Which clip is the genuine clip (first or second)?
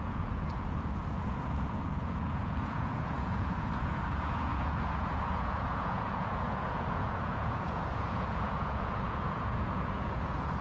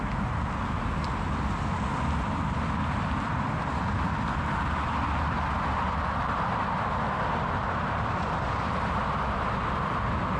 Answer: second